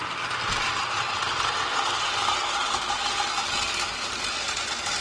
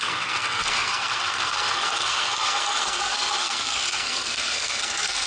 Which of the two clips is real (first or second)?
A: first